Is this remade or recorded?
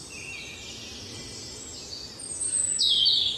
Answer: recorded